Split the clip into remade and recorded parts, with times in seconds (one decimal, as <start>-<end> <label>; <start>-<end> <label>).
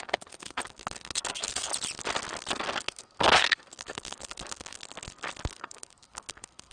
0.0-1.7 remade; 1.7-2.5 recorded; 2.5-4.8 remade; 4.8-5.5 recorded; 5.5-6.7 remade